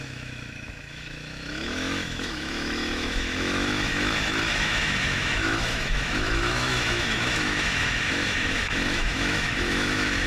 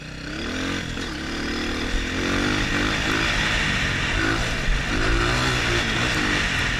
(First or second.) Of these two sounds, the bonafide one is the second